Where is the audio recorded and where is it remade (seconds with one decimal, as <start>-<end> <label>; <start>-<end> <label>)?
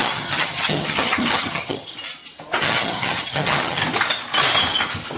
0.0-1.9 remade; 1.9-2.6 recorded; 2.6-3.8 remade; 3.8-5.2 recorded